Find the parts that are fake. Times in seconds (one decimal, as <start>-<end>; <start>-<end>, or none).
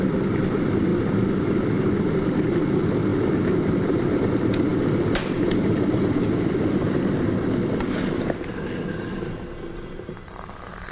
none